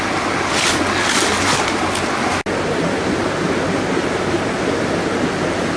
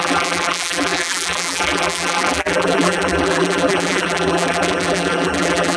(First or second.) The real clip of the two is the first